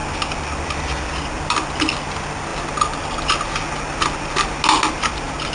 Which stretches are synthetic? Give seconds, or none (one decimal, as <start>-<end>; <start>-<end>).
none